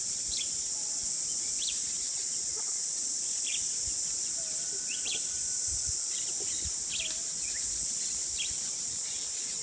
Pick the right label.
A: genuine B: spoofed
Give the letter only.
A